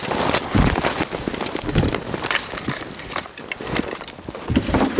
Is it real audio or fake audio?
real